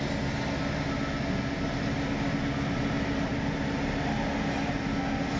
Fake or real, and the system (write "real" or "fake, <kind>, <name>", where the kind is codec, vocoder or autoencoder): real